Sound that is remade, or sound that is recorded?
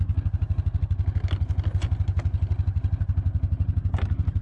recorded